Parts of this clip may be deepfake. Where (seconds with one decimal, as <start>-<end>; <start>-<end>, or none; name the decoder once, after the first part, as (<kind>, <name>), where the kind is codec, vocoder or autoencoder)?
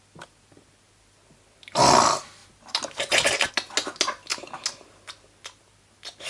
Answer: none